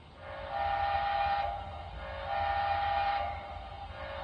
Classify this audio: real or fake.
real